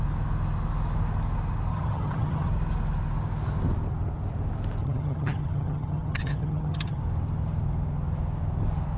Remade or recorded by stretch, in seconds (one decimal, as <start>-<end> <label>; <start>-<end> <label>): 0.0-1.7 recorded; 1.7-2.5 remade; 2.5-4.8 recorded; 4.8-7.0 remade; 7.0-9.0 recorded